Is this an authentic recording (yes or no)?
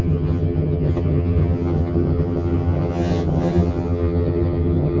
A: no